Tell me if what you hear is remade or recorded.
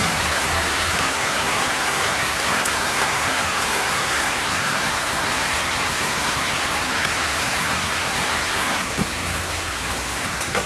remade